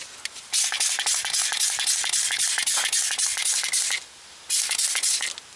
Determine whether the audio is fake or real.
real